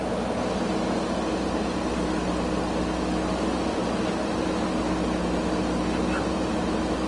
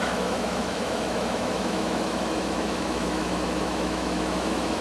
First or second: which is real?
first